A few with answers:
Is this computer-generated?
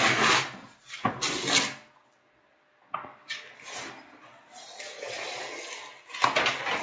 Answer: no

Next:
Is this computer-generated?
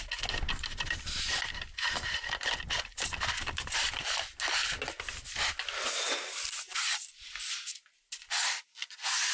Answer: no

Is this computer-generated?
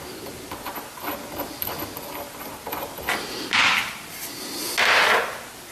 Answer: no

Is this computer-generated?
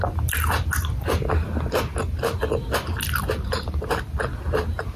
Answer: no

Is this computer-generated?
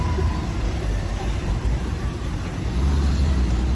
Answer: yes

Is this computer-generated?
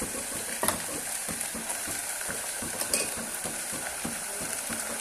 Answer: yes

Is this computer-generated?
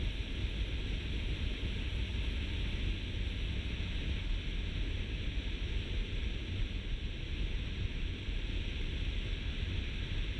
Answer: no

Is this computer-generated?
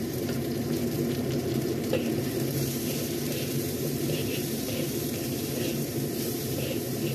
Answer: yes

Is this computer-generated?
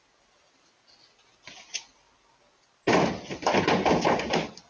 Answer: no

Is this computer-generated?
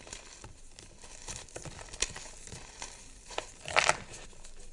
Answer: no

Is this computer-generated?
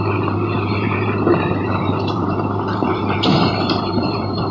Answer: yes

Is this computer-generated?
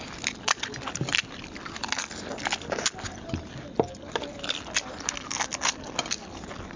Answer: no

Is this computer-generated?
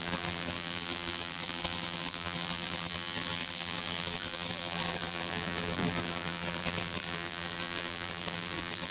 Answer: yes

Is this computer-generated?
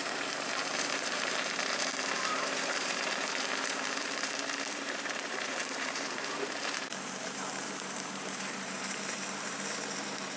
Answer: yes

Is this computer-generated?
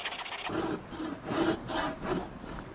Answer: no